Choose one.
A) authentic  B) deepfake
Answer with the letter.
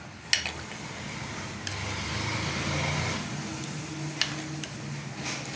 A